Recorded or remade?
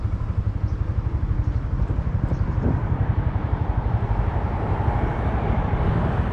remade